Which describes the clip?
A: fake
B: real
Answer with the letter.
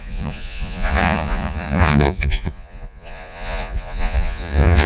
A